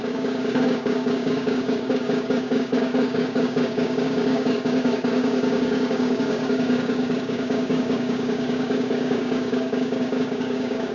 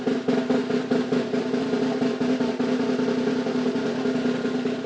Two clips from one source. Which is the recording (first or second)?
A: second